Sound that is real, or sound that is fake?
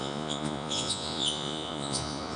fake